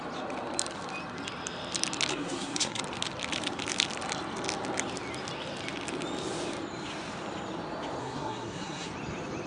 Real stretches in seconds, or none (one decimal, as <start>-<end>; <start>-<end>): 0.0-2.1; 2.8-8.0; 8.9-9.5